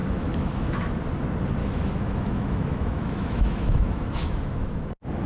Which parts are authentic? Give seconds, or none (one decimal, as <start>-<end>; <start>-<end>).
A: 0.9-1.6; 4.8-5.3